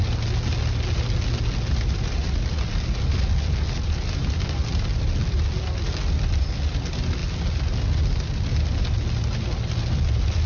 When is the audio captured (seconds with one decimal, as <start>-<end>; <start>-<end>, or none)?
0.0-10.5